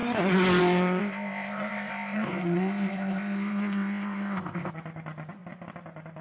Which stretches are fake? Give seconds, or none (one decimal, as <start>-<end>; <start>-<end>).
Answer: 1.0-4.7